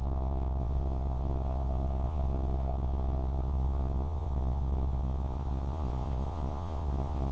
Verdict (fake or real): fake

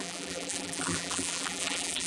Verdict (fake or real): fake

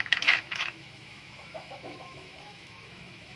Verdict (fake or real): fake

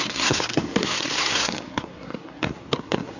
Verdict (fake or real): fake